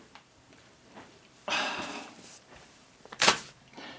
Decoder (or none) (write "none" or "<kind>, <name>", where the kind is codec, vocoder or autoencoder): vocoder, BigVGAN v2